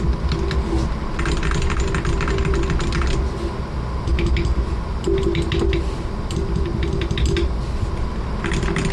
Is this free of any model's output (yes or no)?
yes